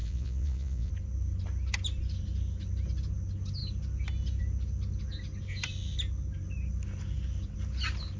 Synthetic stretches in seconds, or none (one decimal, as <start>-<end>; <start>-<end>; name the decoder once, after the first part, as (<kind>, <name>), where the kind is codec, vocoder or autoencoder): 0.0-0.9 (vocoder, Vocos)